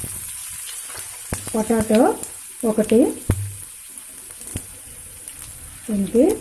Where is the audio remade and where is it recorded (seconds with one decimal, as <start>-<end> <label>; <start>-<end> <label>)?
0.0-0.4 recorded; 0.4-0.9 remade; 0.9-4.5 recorded; 4.5-5.4 remade; 5.4-6.4 recorded